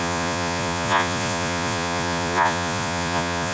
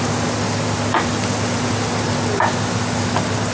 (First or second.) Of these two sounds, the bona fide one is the second